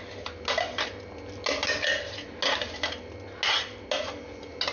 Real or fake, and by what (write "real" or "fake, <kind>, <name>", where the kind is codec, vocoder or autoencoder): real